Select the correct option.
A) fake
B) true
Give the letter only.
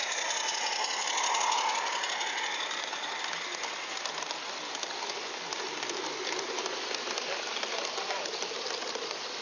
B